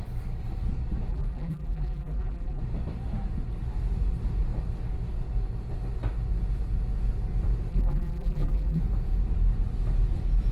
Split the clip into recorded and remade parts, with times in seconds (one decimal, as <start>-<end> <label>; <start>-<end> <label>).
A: 0.0-1.1 recorded; 1.1-2.6 remade; 2.6-7.7 recorded; 7.7-8.8 remade; 8.8-10.5 recorded